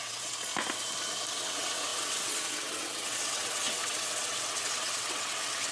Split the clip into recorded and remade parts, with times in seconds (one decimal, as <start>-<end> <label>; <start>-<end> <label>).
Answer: 0.0-0.5 remade; 0.5-1.3 recorded; 1.3-5.7 remade